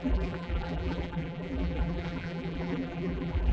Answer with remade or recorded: remade